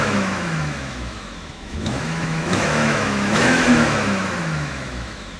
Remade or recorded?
remade